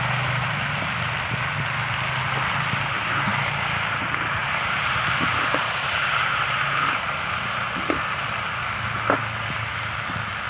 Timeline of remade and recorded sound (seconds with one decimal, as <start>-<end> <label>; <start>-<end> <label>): 0.0-3.3 recorded; 3.3-6.4 remade; 6.4-10.5 recorded